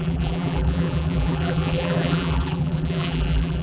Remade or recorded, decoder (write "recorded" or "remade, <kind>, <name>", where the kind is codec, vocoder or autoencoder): remade, vocoder, BigVGAN v2